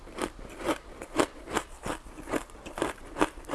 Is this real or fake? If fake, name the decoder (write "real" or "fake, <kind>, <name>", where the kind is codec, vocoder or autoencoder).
fake, vocoder, BigVGAN v2